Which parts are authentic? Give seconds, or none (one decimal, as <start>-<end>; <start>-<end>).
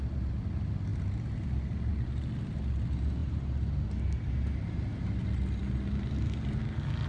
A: 0.0-7.1